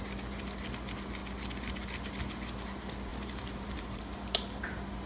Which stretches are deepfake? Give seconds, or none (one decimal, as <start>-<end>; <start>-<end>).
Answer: 3.1-4.0